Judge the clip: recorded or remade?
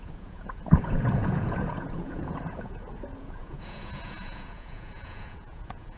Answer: remade